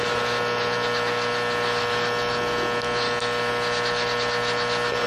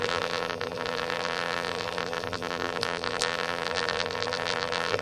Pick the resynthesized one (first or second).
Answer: second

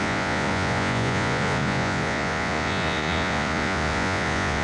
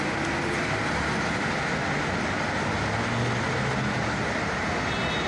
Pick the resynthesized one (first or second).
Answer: first